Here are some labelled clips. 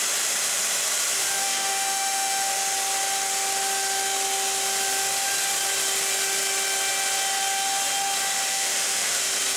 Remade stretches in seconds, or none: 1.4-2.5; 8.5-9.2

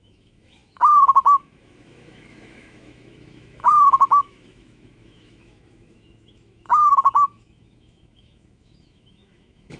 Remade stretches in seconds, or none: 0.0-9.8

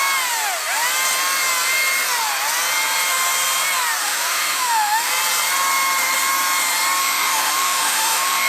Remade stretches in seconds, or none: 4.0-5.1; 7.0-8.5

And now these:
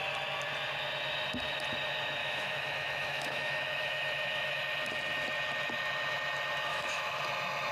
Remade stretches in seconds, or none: 2.2-4.6; 6.7-7.2

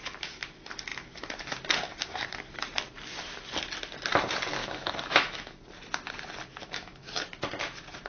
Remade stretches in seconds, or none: 4.6-5.6; 6.6-7.1

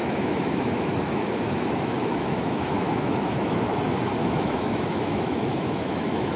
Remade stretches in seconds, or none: 0.0-3.8; 4.2-6.4

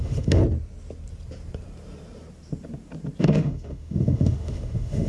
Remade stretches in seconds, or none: 0.0-0.4; 3.2-5.1